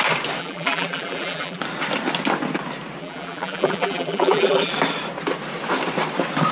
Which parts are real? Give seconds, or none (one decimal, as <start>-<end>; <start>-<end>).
0.0-0.4; 1.6-3.0; 4.7-6.5